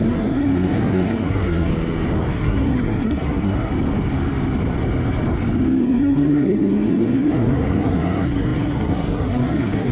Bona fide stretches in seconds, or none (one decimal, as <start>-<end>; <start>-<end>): 1.7-2.3; 3.7-5.8